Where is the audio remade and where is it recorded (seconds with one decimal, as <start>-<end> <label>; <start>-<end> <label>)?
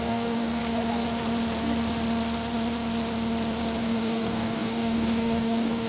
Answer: 0.0-0.6 remade; 0.6-3.8 recorded; 3.8-5.9 remade